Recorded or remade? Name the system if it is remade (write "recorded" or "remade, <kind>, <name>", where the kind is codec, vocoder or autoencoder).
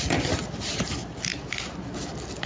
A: recorded